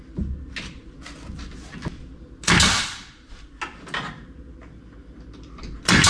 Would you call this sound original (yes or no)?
yes